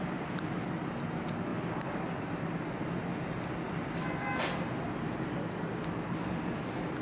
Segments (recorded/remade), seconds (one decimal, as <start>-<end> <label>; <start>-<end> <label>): 0.0-7.0 recorded